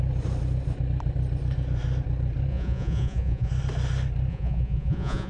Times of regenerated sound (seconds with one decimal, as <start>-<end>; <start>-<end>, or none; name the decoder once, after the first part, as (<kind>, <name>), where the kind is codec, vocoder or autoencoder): 2.5-3.5 (vocoder, Vocos); 4.3-5.3